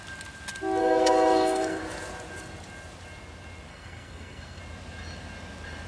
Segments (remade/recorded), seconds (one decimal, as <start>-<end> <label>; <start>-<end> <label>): 0.0-0.8 recorded; 0.8-1.8 remade; 1.8-3.7 recorded; 3.7-4.6 remade; 4.6-5.9 recorded